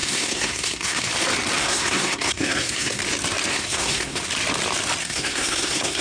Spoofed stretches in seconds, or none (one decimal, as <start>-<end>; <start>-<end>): 0.0-1.1; 1.6-3.0; 3.5-4.2; 5.0-6.0